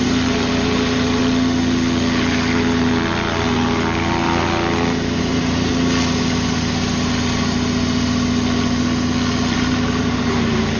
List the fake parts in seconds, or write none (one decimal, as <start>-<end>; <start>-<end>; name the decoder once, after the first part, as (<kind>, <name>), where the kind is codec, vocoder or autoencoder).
0.0-1.2 (vocoder, BigVGAN v2); 5.2-5.7; 9.5-10.8

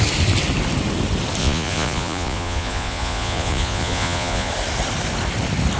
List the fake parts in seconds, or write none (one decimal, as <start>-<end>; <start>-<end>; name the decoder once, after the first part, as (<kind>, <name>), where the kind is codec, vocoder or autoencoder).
1.4-4.5 (vocoder, Vocos)

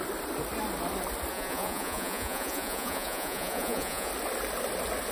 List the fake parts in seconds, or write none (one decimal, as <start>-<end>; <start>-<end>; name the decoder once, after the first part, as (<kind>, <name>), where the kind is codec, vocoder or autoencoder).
1.3-4.1 (vocoder, Vocos)

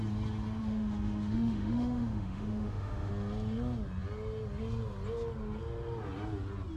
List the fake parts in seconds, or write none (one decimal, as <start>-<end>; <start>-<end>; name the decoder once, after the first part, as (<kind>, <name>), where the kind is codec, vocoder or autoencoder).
0.6-3.1 (autoencoder, DAC-VAE)

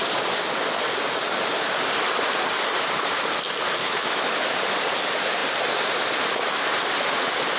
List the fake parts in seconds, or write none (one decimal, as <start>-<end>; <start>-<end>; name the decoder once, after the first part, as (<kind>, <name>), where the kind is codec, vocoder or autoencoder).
3.8-4.4 (autoencoder, DAC-VAE)

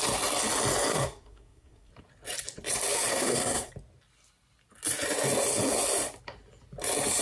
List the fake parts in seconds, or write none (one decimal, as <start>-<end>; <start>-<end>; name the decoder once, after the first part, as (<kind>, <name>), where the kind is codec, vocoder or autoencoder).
0.9-1.9 (codec, SNAC); 3.1-3.7

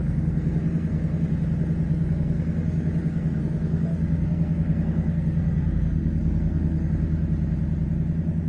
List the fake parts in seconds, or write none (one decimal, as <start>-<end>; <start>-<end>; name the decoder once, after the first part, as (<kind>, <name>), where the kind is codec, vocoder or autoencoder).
0.0-1.3 (codec, SNAC); 1.9-6.9